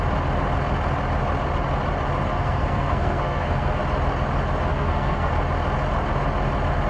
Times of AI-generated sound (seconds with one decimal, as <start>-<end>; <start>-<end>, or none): 2.3-3.8; 4.7-5.3